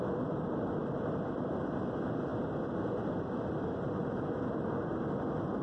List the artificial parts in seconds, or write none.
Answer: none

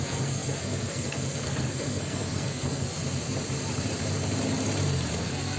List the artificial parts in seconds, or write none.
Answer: 0.0-3.0 (codec, SNAC); 5.1-5.6

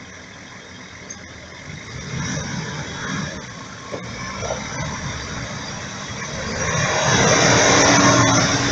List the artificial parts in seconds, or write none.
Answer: none